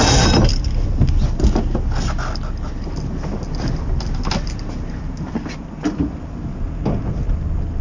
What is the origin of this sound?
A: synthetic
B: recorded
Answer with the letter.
B